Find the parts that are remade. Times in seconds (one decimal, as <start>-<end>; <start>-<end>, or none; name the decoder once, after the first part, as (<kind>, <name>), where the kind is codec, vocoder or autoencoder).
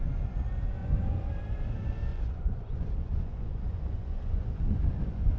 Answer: 0.8-1.3 (vocoder, Vocos); 2.1-5.4